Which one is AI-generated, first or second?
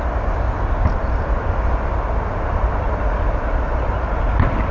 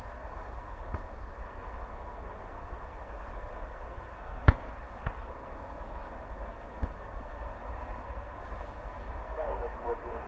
second